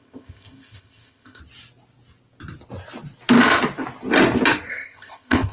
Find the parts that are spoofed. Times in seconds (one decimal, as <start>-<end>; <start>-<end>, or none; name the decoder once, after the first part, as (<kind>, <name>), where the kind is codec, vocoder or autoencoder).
0.0-1.4 (codec, ZipCodec); 4.7-5.5